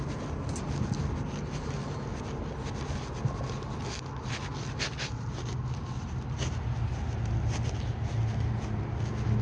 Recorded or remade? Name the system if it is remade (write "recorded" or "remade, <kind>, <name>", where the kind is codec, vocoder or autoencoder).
recorded